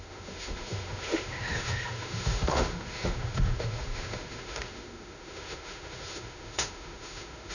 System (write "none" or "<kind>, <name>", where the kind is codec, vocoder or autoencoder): autoencoder, DAC-VAE